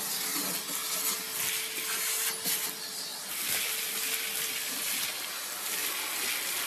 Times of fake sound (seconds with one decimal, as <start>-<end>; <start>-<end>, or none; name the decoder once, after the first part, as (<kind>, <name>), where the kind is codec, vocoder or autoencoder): 3.1-6.2 (vocoder, BigVGAN v2)